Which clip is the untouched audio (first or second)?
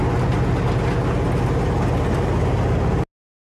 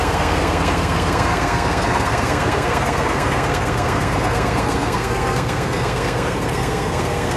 first